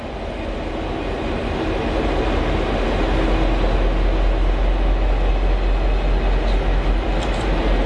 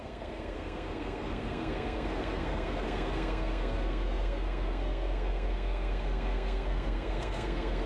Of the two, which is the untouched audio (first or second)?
first